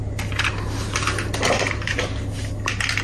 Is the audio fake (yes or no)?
no